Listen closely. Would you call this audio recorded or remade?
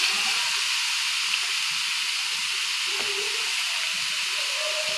recorded